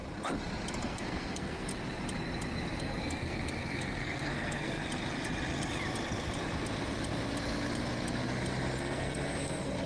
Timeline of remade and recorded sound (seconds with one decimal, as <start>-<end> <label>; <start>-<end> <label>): 0.0-0.8 recorded; 0.8-1.7 remade; 1.7-2.8 recorded; 2.8-4.8 remade; 4.8-8.8 recorded; 8.8-9.9 remade